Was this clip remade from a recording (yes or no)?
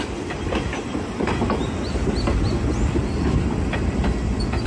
no